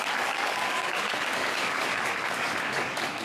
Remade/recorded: remade